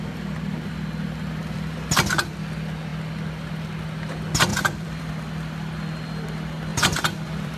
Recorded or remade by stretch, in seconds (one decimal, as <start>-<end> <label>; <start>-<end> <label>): 0.0-1.4 recorded; 1.4-1.9 remade; 1.9-4.5 recorded; 4.5-5.1 remade; 5.1-6.7 recorded; 6.7-7.6 remade